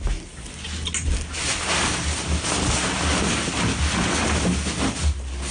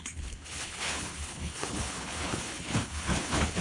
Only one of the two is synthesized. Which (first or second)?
second